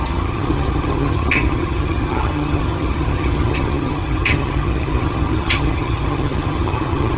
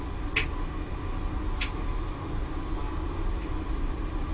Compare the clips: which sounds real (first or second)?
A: second